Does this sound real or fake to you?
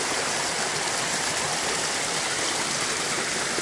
real